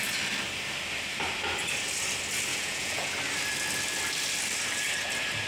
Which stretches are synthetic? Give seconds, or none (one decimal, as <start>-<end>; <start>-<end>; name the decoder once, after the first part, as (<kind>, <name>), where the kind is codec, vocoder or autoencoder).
2.5-3.1 (vocoder, Vocos)